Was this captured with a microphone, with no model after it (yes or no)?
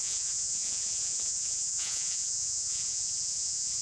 no